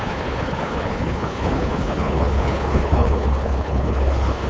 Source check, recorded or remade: remade